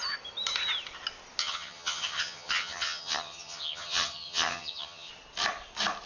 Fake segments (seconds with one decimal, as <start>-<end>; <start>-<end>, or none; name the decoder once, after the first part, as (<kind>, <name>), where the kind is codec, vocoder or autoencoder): 1.4-5.1 (vocoder, HiFi-GAN)